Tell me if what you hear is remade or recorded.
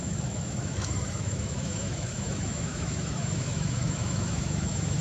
remade